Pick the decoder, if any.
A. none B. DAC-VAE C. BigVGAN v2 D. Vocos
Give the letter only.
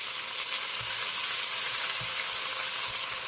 A